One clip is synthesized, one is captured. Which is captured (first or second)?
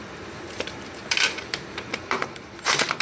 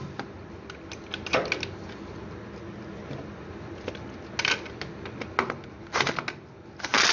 second